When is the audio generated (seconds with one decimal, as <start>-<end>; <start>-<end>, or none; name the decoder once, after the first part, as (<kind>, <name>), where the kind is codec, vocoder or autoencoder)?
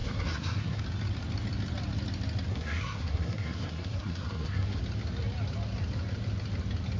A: 0.0-0.8 (codec, SNAC); 2.5-4.8